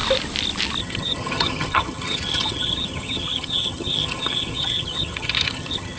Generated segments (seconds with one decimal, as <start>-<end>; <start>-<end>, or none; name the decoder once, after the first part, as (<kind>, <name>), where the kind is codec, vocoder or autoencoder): 0.8-6.0 (vocoder, HiFi-GAN)